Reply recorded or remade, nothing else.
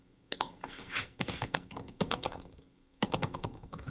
remade